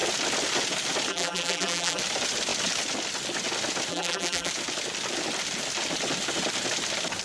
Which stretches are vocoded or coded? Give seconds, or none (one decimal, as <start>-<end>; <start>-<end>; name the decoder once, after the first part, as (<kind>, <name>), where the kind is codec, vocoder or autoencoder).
1.1-2.0 (vocoder, BigVGAN v2); 3.9-4.5